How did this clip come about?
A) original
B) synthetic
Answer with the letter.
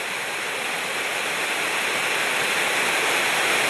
A